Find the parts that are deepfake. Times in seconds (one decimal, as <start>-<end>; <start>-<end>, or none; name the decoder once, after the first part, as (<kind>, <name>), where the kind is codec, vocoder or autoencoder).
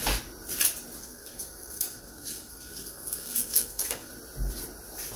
1.0-4.1 (codec, SNAC)